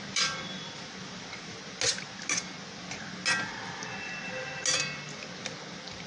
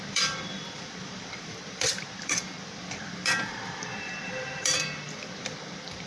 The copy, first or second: second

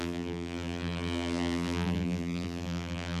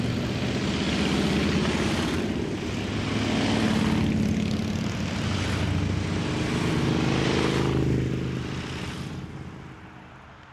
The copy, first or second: first